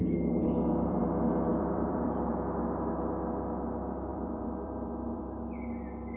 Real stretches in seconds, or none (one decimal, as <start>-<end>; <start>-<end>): 0.0-0.4; 1.0-1.5; 2.3-4.1; 5.2-6.2